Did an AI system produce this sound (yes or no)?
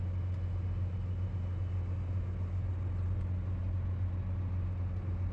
no